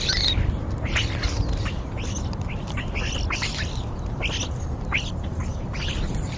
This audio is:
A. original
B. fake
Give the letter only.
A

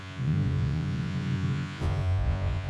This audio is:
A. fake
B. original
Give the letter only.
A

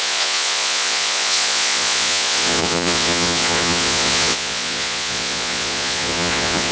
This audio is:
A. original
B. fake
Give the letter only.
B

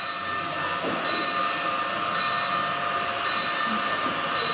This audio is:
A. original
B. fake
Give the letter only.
A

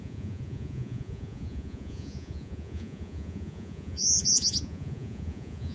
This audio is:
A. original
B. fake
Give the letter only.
B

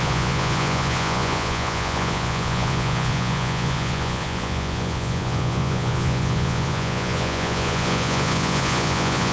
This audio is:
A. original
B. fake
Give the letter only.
B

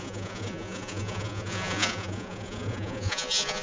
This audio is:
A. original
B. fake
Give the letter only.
B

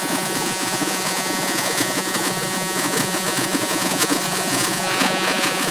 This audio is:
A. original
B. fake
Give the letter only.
B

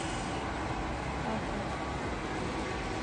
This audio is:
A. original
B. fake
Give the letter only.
A